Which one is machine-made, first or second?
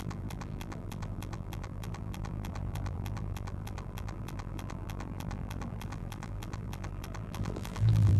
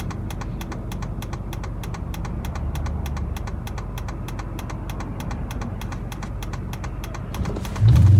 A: first